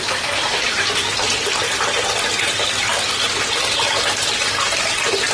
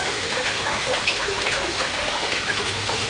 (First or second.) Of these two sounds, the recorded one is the first